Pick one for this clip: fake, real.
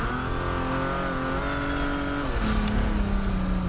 real